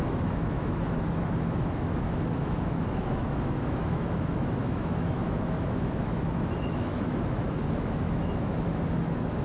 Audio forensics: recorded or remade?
remade